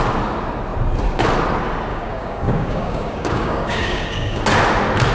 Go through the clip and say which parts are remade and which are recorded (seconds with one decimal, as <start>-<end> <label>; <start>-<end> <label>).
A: 0.0-1.9 recorded; 1.9-4.4 remade; 4.4-5.1 recorded